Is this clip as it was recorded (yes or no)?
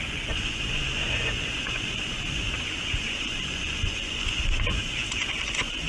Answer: no